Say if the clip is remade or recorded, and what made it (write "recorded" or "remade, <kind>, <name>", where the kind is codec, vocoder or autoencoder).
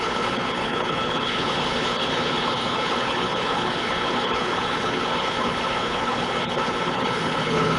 remade, codec, HILCodec